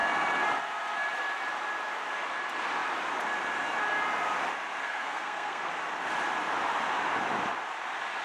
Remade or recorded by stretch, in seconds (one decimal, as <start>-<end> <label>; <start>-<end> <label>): 0.0-4.8 recorded; 4.8-5.7 remade; 5.7-8.2 recorded